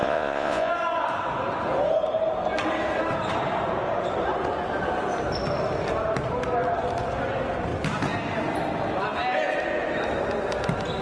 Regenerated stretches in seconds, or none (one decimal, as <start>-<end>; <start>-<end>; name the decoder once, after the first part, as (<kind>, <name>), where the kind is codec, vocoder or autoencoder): 0.0-0.7 (vocoder, Vocos)